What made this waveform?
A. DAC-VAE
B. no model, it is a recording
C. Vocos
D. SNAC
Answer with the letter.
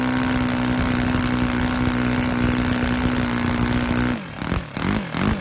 B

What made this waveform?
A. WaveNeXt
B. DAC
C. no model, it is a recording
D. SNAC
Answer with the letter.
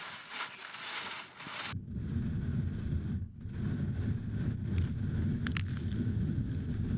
C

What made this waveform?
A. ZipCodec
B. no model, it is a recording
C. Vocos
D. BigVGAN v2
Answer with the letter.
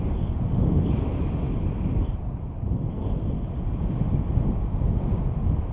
B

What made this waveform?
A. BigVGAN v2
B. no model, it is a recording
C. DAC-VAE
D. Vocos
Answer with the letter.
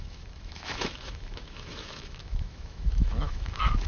C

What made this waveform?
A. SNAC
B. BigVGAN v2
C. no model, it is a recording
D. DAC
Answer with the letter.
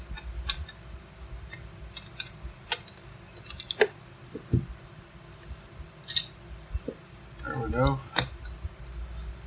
C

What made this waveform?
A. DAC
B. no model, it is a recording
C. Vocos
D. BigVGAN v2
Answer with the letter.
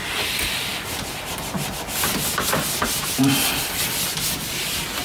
B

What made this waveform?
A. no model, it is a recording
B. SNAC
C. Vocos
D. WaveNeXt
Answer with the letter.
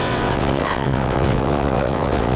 D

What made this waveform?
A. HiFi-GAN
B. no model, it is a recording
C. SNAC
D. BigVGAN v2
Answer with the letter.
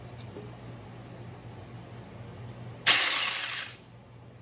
B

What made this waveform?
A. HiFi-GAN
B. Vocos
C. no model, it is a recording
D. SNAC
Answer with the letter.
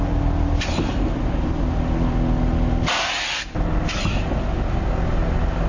C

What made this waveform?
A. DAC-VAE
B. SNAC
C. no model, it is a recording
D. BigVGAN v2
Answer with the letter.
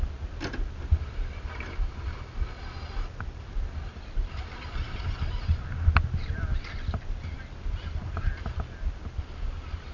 C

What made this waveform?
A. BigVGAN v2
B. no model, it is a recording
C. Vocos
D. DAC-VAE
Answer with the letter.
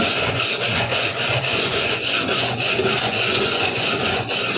C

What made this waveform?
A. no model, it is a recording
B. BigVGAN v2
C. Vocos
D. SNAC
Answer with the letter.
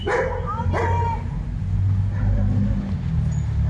A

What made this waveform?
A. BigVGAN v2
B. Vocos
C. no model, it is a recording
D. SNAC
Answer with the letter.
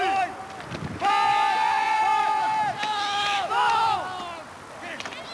C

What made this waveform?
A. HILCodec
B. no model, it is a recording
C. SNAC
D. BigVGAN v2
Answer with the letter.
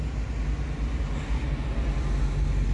B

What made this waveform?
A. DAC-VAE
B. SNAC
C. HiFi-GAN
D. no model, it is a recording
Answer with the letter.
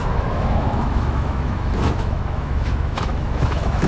A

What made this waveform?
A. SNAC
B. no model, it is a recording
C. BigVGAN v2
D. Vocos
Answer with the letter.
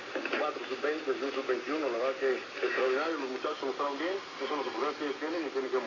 B